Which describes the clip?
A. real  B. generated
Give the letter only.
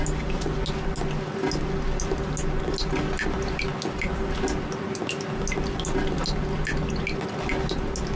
A